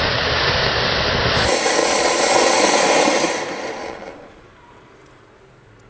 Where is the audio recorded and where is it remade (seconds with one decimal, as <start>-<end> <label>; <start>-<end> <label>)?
0.0-1.8 recorded; 1.8-2.6 remade; 2.6-3.8 recorded; 3.8-4.5 remade; 4.5-5.9 recorded